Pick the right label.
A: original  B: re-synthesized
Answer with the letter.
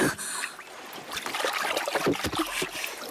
A